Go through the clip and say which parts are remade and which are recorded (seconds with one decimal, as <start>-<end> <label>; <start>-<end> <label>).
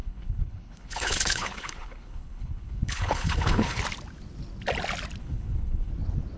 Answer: 0.0-3.8 remade; 3.8-5.2 recorded; 5.2-5.9 remade; 5.9-6.4 recorded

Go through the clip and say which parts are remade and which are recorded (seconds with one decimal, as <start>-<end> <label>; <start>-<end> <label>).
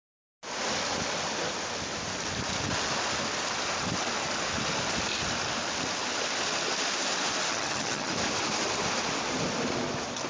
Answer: 0.0-7.5 recorded; 7.5-8.1 remade; 8.1-10.3 recorded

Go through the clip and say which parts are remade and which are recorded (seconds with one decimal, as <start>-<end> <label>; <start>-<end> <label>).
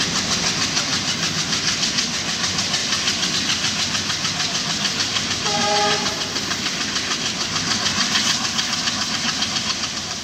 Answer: 0.0-0.9 recorded; 0.9-1.4 remade; 1.4-2.8 recorded; 2.8-3.3 remade; 3.3-10.2 recorded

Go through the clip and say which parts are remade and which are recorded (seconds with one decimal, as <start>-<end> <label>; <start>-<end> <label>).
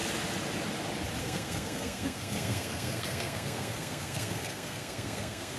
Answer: 0.0-1.2 recorded; 1.2-5.6 remade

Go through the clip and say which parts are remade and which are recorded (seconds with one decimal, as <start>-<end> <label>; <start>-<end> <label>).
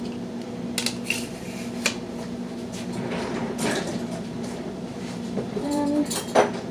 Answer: 0.0-3.4 recorded; 3.4-6.2 remade; 6.2-6.7 recorded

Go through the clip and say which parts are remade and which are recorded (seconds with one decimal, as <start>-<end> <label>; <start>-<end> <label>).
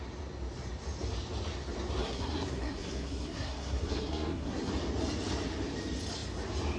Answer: 0.0-2.0 recorded; 2.0-4.7 remade; 4.7-6.8 recorded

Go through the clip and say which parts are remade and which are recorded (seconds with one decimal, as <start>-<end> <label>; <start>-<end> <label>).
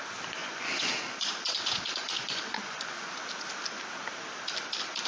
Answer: 0.0-0.4 recorded; 0.4-3.1 remade; 3.1-5.1 recorded